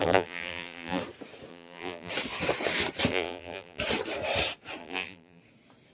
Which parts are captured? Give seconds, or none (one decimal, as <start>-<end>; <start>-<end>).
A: 1.0-1.5; 2.1-3.1; 3.8-4.8; 5.4-5.9